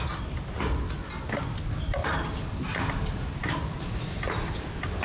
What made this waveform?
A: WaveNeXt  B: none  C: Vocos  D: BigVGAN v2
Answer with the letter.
B